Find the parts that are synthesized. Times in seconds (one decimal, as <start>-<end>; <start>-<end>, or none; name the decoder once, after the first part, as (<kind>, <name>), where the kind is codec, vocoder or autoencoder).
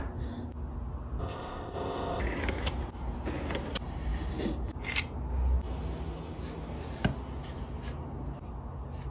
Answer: 1.2-2.2 (codec, ZipCodec)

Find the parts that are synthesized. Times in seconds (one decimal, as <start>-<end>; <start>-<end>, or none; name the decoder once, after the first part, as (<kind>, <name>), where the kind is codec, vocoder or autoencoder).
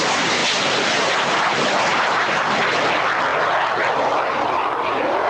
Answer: 0.4-1.1 (vocoder, BigVGAN v2); 1.9-2.6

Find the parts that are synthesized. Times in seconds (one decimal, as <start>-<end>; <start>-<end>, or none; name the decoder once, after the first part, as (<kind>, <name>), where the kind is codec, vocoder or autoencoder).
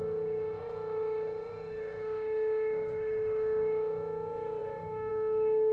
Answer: 0.0-5.7 (autoencoder, DAC-VAE)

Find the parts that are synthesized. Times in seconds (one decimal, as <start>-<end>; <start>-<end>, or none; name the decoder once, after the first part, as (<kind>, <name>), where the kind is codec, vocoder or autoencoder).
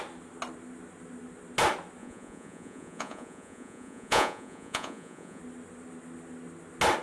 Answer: 2.0-5.4 (vocoder, Vocos)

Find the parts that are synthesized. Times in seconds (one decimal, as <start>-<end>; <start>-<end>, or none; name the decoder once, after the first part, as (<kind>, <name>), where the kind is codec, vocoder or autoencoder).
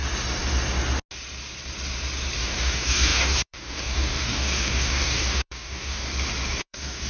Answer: 2.4-6.1 (codec, DAC); 6.6-7.1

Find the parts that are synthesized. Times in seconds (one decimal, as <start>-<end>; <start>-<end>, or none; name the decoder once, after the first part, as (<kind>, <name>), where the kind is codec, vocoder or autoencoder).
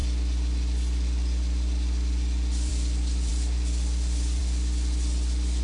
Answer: none